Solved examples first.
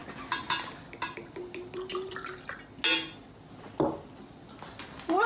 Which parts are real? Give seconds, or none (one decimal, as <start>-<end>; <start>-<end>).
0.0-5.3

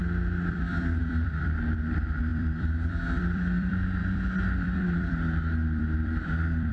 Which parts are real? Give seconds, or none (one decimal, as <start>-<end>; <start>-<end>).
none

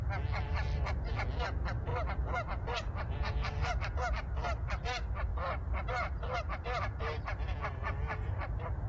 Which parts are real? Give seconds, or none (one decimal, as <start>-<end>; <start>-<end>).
0.0-1.9; 3.7-8.9

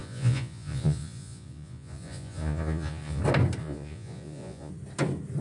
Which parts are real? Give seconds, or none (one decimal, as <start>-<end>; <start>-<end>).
3.2-3.6; 4.7-5.4

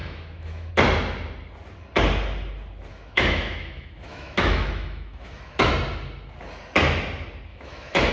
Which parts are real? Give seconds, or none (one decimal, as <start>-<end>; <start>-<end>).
0.7-2.9; 5.7-7.5

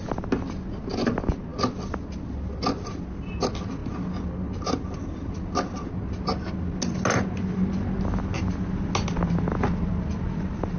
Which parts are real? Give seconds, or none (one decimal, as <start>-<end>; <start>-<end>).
0.0-10.8